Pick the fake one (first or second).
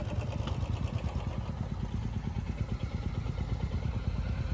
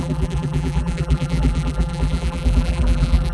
second